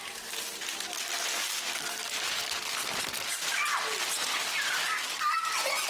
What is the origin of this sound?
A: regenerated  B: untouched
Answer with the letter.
B